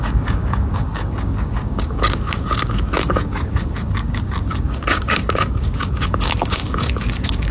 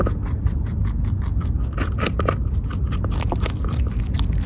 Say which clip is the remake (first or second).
first